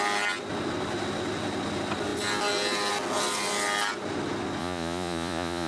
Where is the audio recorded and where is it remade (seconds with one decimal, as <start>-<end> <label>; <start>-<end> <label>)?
0.0-4.6 recorded; 4.6-5.7 remade